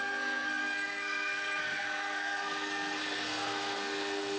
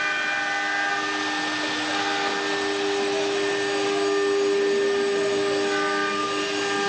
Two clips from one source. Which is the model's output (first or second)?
first